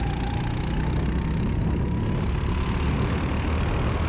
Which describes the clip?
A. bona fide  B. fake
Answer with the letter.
A